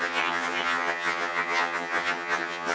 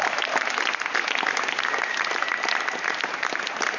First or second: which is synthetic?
first